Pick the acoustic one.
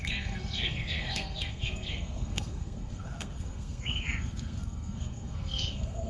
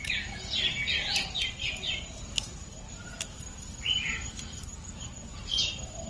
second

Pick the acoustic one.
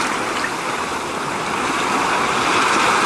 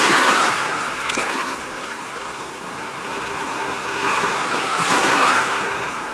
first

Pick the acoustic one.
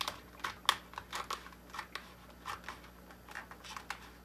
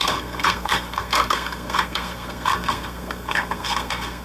first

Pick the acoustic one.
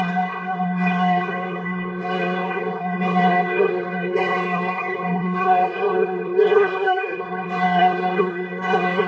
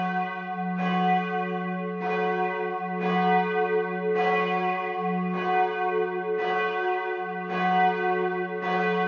second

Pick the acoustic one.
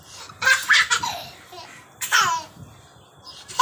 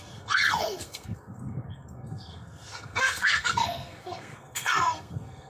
first